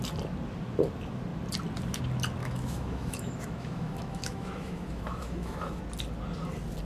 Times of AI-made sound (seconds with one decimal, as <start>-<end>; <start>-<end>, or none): 2.4-5.8